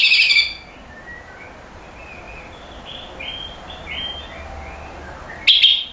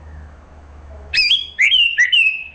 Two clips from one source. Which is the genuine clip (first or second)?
first